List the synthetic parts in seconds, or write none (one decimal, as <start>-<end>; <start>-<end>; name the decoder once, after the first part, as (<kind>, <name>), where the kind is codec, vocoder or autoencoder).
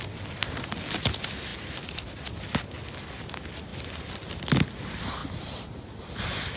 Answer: none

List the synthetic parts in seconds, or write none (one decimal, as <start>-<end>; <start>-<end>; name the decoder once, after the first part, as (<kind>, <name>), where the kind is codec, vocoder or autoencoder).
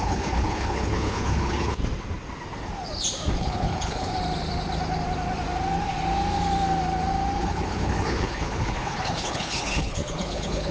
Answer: 0.0-1.8 (codec, HILCodec); 3.4-4.1; 7.4-10.7